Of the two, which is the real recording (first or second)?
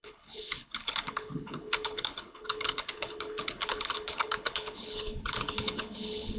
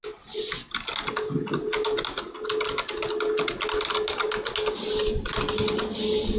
second